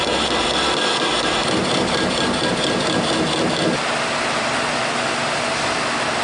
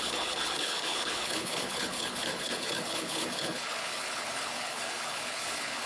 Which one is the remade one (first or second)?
second